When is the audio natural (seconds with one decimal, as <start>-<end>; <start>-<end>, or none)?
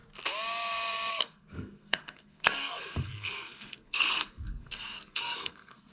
0.0-1.1